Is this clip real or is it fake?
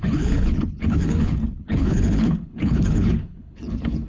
fake